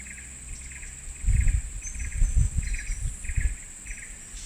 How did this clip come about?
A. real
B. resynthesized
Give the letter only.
A